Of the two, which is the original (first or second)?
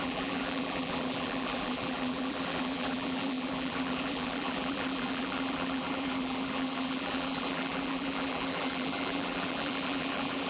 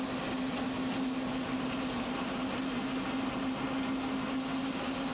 second